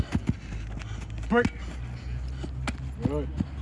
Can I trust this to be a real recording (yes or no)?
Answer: yes